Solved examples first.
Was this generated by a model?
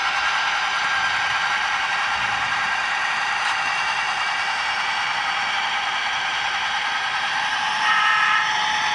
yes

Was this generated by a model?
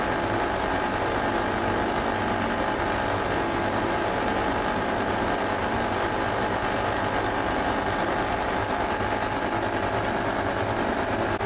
no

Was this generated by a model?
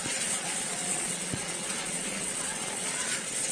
yes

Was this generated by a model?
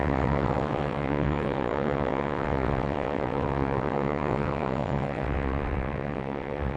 yes